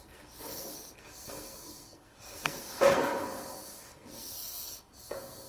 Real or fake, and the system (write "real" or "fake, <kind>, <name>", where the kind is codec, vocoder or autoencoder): fake, codec, SNAC